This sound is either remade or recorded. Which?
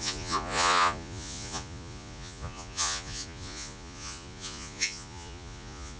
remade